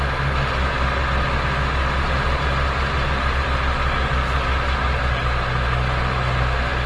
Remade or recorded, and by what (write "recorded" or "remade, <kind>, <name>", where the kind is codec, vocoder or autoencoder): recorded